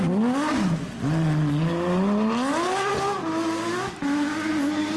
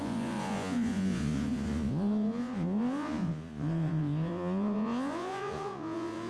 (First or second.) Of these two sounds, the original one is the first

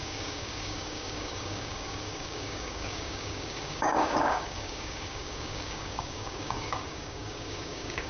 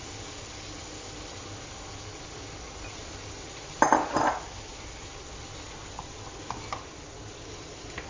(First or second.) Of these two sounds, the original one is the second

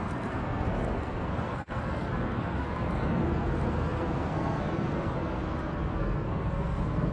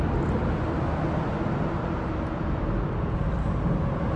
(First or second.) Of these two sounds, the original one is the second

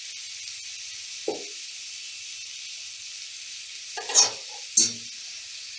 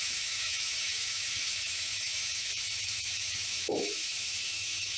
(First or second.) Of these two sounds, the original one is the first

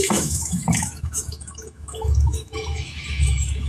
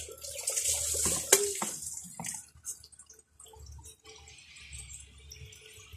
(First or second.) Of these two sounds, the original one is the second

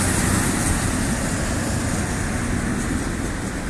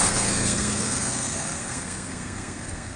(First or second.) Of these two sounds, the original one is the first